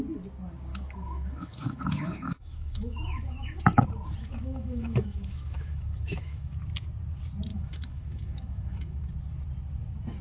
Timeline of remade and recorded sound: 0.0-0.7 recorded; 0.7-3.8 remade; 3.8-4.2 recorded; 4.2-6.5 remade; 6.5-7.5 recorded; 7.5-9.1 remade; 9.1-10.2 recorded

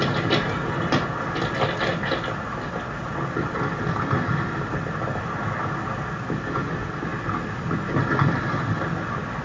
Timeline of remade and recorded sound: 0.0-9.4 recorded

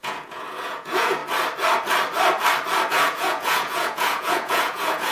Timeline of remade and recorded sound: 0.0-1.2 remade; 1.2-2.9 recorded; 2.9-5.1 remade

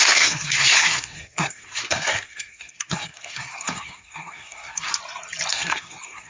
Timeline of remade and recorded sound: 0.0-4.9 remade; 4.9-5.5 recorded; 5.5-6.3 remade

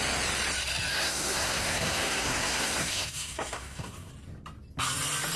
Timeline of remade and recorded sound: 0.0-0.9 recorded; 0.9-4.1 remade; 4.1-5.4 recorded